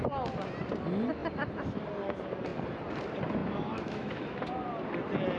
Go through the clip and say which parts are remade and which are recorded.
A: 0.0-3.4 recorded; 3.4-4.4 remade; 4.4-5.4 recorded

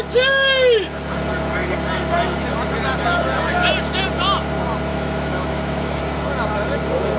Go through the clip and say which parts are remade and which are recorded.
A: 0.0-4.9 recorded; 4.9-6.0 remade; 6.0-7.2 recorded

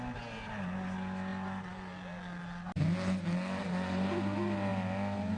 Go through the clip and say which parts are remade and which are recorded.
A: 0.0-5.4 recorded

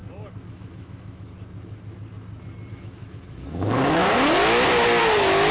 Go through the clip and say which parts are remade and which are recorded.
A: 0.0-0.5 recorded; 0.5-1.3 remade; 1.3-2.7 recorded; 2.7-4.0 remade; 4.0-5.0 recorded; 5.0-5.5 remade